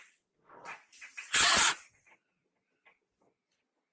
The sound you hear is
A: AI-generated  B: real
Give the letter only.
A